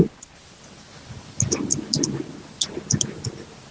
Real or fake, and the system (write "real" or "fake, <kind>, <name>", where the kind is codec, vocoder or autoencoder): real